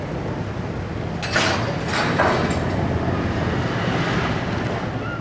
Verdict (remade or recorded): recorded